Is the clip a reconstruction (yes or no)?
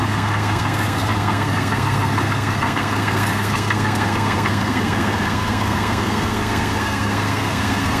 yes